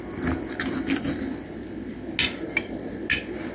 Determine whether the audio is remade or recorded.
recorded